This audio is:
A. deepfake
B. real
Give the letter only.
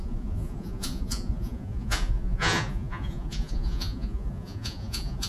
A